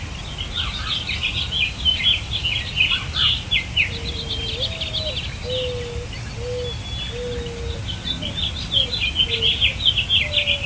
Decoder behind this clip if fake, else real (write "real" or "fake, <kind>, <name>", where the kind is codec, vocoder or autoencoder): real